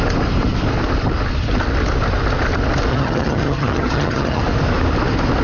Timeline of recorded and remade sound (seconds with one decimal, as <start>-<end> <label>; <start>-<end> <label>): 0.0-2.9 recorded; 2.9-4.4 remade; 4.4-5.4 recorded